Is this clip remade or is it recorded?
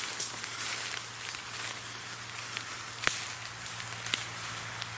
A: recorded